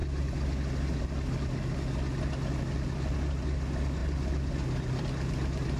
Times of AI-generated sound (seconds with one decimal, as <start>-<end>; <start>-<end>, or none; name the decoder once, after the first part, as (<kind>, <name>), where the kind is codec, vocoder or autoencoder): none